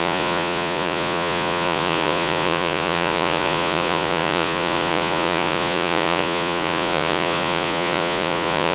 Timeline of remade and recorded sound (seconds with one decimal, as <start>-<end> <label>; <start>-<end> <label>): 0.0-8.7 remade